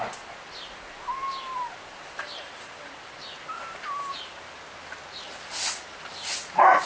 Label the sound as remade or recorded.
recorded